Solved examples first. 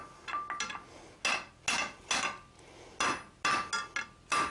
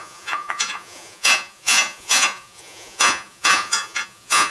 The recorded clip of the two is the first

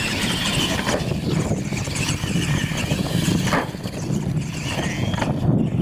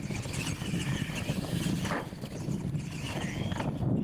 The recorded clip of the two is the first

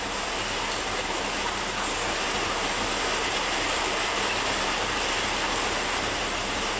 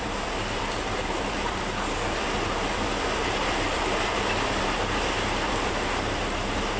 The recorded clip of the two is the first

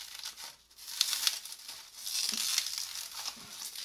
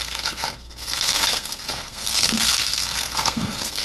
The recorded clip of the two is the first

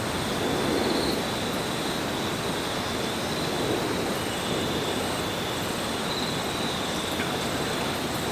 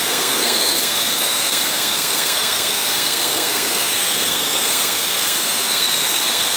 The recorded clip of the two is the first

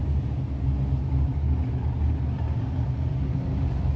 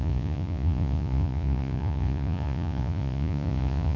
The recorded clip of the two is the first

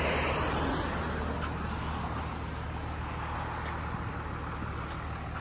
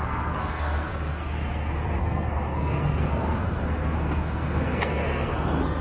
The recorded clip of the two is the first